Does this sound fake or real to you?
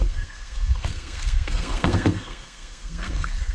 fake